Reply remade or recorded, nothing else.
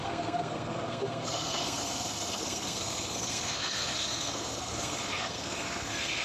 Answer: remade